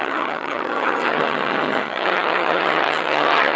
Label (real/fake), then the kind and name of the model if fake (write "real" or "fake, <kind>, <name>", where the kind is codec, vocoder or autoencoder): fake, vocoder, HiFi-GAN